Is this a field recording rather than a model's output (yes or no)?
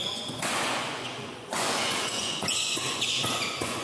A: no